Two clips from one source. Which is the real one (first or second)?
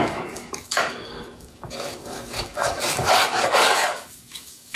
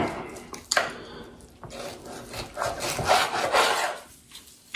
second